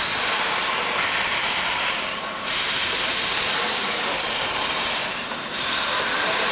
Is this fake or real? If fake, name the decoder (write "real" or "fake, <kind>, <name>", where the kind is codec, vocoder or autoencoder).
fake, vocoder, BigVGAN v2